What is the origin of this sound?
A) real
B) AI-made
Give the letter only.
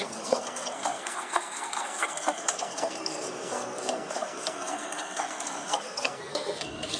B